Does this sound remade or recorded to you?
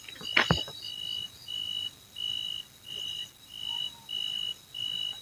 recorded